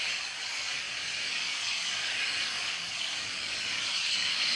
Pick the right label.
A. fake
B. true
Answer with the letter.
A